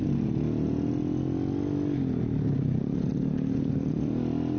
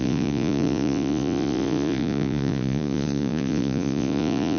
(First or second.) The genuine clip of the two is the first